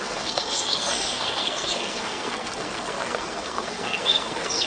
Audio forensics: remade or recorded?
remade